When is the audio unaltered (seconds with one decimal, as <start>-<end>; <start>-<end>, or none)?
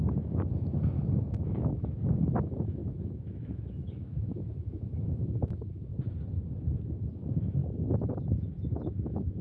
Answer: 5.9-7.1; 7.6-8.2